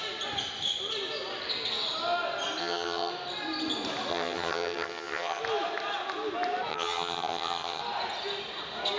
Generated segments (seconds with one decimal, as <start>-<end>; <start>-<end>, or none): 2.6-3.1; 4.1-5.4; 6.7-7.8

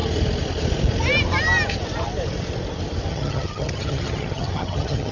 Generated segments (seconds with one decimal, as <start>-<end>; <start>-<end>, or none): 3.1-5.1

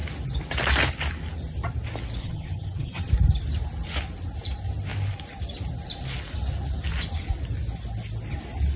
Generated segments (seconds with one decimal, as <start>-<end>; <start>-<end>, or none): 2.2-3.1

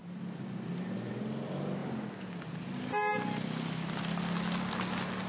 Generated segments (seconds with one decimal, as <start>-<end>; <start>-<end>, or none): none

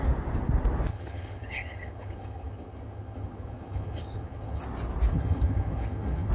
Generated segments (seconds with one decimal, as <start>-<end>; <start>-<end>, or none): 0.9-4.6; 5.1-6.3

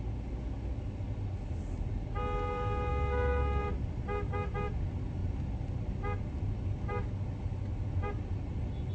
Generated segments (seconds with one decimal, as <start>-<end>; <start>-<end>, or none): none

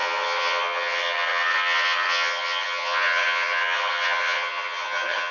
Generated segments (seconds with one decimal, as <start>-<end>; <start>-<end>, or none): 0.0-5.3

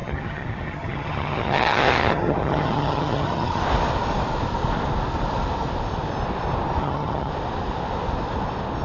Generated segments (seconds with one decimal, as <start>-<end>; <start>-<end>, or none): 0.0-3.6; 6.8-7.3